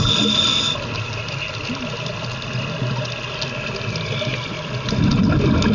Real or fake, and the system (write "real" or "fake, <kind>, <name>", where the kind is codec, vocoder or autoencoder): real